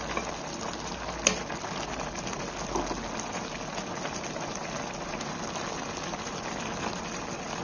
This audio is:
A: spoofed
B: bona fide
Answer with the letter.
B